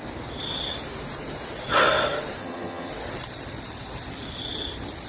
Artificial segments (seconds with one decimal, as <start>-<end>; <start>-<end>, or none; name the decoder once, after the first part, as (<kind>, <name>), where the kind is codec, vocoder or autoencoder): 2.4-2.9 (vocoder, HiFi-GAN)